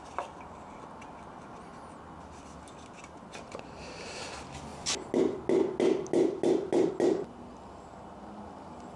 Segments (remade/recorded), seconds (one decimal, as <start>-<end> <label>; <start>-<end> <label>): 0.0-9.0 recorded